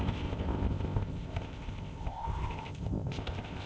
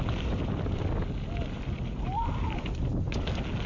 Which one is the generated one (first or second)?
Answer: first